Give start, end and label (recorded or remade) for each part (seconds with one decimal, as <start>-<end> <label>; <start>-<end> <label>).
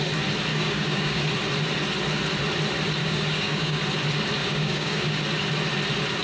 0.0-0.5 recorded; 0.5-1.2 remade; 1.2-3.0 recorded; 3.0-3.8 remade; 3.8-4.4 recorded; 4.4-5.2 remade; 5.2-6.2 recorded